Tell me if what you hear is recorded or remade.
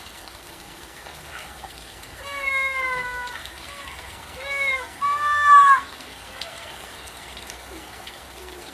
remade